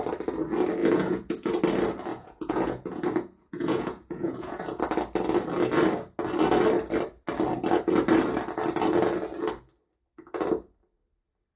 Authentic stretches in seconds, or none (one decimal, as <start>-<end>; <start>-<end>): 0.0-0.8; 1.5-2.1; 4.8-11.6